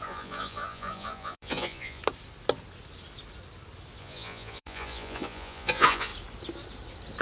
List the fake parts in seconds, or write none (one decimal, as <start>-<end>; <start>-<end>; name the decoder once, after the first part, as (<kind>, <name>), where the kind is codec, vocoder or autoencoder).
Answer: 0.0-2.0 (vocoder, Vocos); 4.0-6.1